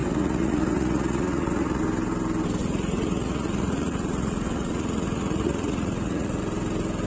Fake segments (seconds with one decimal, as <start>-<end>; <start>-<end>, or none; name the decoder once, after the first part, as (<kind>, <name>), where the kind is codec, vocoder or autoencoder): 0.0-1.8 (vocoder, Vocos); 2.6-6.4